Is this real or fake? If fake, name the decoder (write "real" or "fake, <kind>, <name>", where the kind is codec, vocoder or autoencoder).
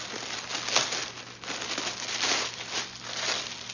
real